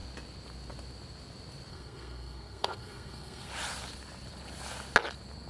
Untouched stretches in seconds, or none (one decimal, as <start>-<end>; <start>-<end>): 0.0-1.7; 3.5-5.5